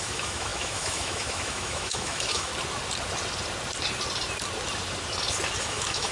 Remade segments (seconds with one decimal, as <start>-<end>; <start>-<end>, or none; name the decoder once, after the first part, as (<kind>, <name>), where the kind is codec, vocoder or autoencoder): 0.0-2.5 (autoencoder, DAC-VAE); 5.6-6.1